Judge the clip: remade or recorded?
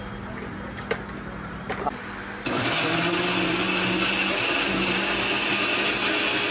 recorded